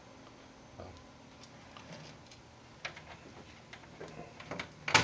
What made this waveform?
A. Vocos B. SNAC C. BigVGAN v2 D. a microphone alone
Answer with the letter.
D